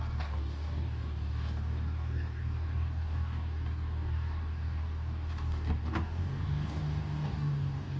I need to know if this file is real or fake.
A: fake